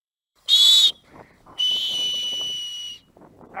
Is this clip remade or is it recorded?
remade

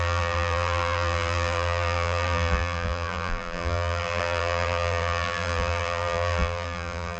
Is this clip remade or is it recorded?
remade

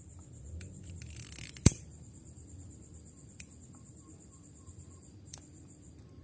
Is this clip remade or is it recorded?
remade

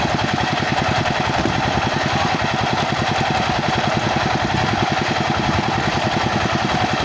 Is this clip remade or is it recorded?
remade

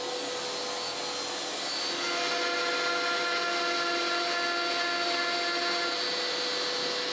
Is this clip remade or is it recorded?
recorded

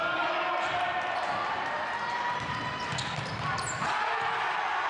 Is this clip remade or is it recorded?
recorded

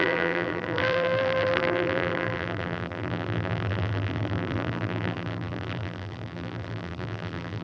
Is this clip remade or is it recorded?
remade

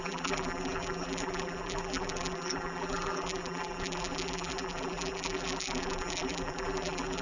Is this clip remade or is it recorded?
remade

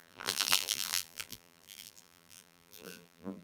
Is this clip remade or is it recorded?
remade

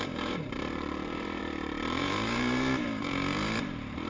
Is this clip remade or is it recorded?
remade